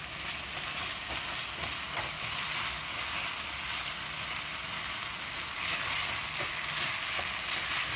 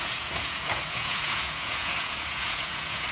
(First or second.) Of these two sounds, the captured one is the first